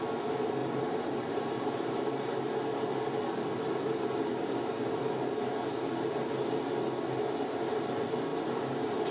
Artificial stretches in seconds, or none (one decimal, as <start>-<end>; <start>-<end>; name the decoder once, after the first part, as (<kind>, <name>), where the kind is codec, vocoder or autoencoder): 0.6-2.5 (vocoder, BigVGAN v2); 8.3-9.1